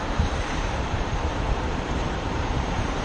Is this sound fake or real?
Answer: fake